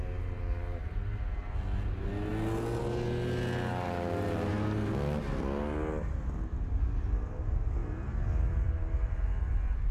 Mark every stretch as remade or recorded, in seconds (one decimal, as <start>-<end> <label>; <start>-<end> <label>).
0.0-9.9 recorded